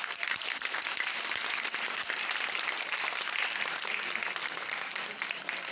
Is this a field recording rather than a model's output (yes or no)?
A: no